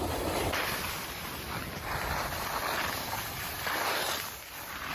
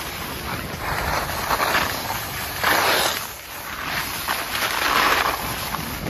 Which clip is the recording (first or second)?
second